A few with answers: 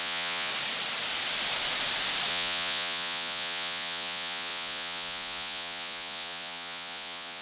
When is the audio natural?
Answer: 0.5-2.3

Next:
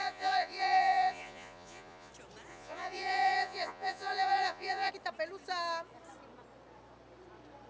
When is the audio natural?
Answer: 2.1-2.5; 4.9-7.7

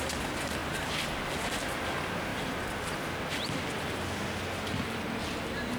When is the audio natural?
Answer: 0.0-5.8